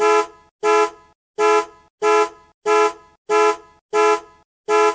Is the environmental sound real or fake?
real